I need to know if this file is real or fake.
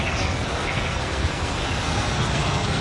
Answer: fake